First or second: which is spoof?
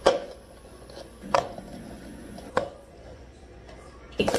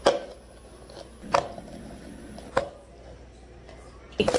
first